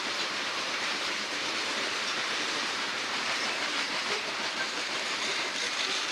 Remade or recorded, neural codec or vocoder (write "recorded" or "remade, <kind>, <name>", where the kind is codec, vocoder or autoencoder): remade, vocoder, BigVGAN v2